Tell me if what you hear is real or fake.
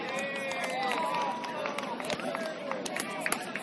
real